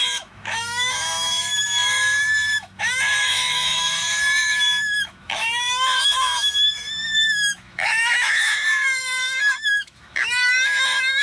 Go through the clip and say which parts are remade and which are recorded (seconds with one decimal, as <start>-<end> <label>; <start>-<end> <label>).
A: 0.0-11.2 remade